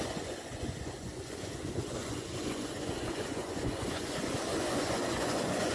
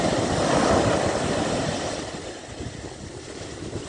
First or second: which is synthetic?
first